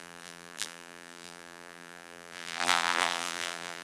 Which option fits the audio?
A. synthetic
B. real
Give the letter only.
A